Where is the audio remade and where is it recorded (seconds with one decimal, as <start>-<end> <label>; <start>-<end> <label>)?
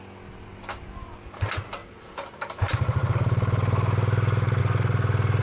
0.0-1.8 recorded; 1.8-4.6 remade; 4.6-5.4 recorded